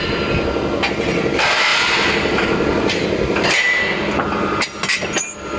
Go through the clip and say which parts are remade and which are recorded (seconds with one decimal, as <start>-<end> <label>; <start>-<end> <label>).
0.0-1.7 recorded; 1.7-4.6 remade; 4.6-5.6 recorded